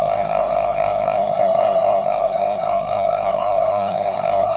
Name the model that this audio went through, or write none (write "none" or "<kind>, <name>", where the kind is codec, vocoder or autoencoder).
codec, SNAC